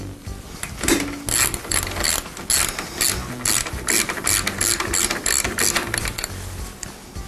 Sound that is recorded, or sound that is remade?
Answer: recorded